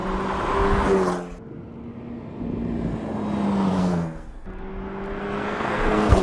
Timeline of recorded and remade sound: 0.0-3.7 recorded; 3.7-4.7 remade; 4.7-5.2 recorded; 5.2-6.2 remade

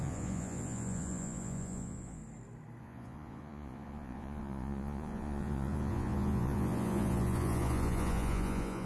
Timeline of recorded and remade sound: 0.0-2.2 remade; 2.2-2.8 recorded; 2.8-8.9 remade